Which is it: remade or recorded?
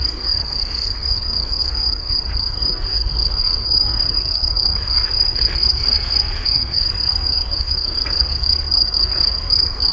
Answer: remade